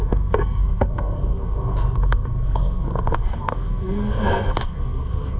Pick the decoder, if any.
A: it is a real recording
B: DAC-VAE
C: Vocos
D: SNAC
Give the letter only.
D